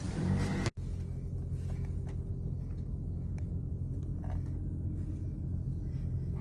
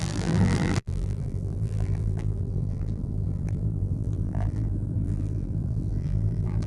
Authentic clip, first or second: first